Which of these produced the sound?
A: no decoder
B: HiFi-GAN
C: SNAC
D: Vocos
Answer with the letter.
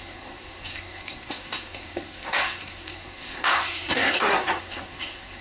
C